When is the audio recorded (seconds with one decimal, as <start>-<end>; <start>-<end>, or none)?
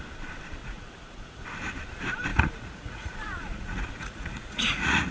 0.0-0.6; 1.4-2.3